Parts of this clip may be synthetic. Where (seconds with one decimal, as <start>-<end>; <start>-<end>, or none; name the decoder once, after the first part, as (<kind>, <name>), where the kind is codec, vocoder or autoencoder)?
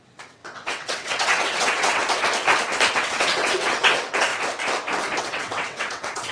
0.0-2.0 (vocoder, WaveNeXt); 2.9-4.3; 5.2-6.3